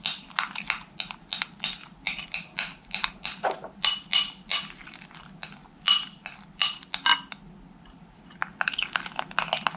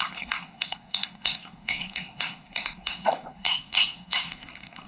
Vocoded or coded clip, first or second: second